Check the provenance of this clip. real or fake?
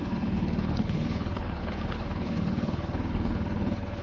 fake